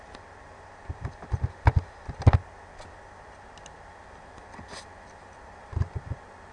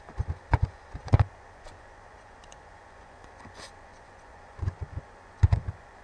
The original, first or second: first